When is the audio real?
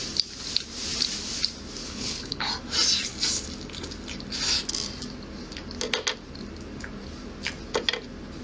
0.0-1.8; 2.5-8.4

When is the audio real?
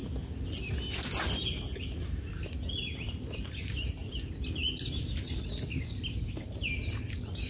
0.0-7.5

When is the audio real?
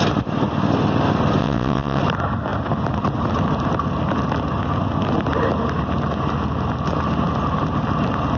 0.0-1.4; 2.0-8.4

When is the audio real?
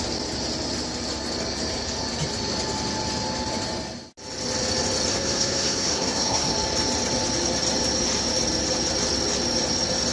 0.0-5.1; 6.5-10.1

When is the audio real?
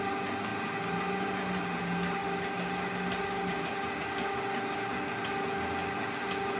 0.0-6.6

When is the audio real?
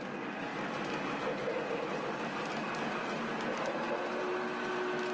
0.0-0.5; 2.8-5.1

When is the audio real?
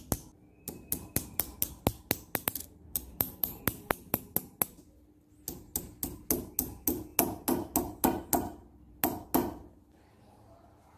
0.0-2.9; 3.6-11.0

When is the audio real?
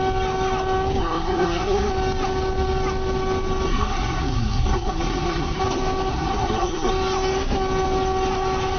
0.0-1.0; 1.9-3.7; 5.6-6.1; 6.9-8.8